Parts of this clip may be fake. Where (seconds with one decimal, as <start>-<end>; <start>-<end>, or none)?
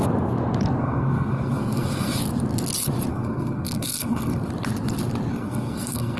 0.8-2.2; 3.1-4.5; 5.3-6.2